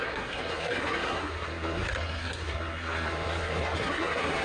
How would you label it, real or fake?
fake